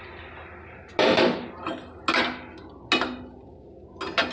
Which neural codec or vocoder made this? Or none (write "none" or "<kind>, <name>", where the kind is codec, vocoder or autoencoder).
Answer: none